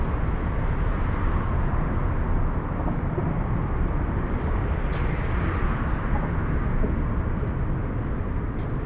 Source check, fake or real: real